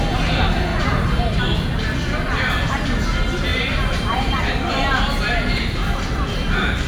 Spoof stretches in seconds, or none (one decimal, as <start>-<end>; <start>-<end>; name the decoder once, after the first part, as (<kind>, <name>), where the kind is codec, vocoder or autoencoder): 0.7-1.4 (vocoder, BigVGAN v2); 3.5-4.4